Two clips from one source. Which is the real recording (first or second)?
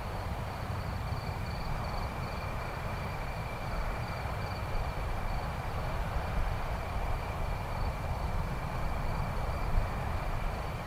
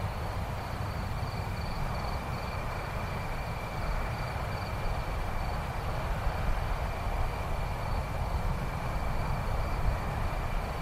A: second